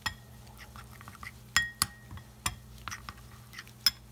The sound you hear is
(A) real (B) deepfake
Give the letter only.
A